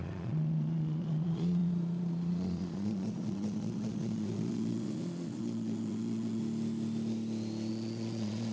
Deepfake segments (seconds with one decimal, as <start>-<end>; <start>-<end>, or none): 0.0-6.4; 7.7-8.5